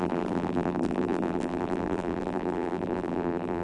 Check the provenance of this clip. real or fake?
fake